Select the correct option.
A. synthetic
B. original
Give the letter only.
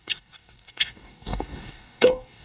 A